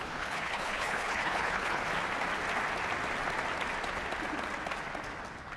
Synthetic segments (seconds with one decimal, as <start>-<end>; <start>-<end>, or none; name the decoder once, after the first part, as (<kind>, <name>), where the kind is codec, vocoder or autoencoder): 0.0-1.8 (codec, HILCodec)